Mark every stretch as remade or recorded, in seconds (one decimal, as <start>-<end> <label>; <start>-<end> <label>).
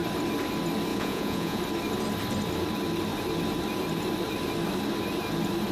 0.0-0.9 recorded; 0.9-1.6 remade; 1.6-5.7 recorded